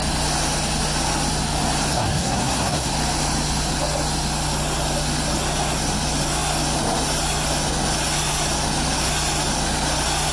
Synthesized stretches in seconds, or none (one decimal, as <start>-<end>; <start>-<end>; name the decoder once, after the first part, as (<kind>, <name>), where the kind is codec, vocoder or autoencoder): 1.9-2.9 (codec, SNAC)